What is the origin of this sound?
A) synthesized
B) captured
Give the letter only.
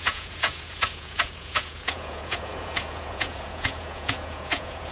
A